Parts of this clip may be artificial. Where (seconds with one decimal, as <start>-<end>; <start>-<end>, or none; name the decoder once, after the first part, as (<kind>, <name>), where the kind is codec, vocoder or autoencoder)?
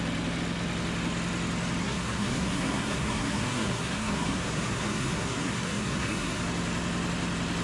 1.8-6.4 (codec, SNAC)